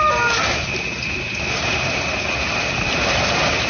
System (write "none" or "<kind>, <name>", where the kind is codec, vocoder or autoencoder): none